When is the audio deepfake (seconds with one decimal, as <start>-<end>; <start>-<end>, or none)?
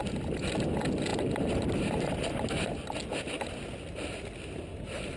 none